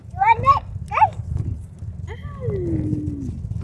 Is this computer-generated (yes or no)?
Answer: no